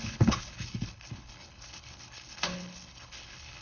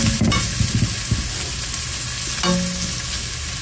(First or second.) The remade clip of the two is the first